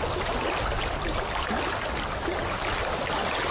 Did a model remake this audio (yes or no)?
no